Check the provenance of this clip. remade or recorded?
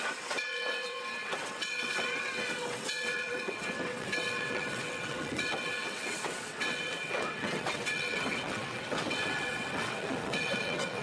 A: remade